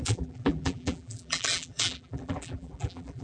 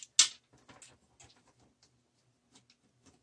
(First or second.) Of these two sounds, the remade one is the first